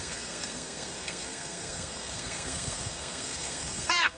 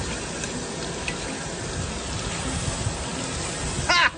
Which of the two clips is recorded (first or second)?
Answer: second